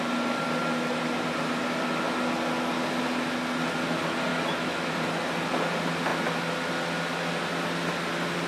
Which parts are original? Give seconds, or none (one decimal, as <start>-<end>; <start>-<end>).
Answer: 0.0-4.3; 4.9-8.5